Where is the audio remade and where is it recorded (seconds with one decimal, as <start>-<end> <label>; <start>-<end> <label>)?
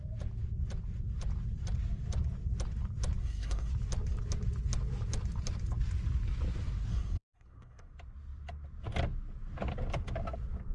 0.0-3.2 recorded; 3.2-3.7 remade; 3.7-6.9 recorded; 6.9-7.9 remade; 7.9-10.7 recorded